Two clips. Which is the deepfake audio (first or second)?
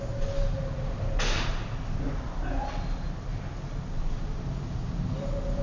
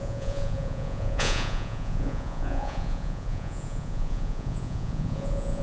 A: second